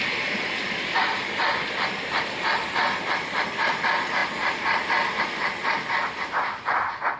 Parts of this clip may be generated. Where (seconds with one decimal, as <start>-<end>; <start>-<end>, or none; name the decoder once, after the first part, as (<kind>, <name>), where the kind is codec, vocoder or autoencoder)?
none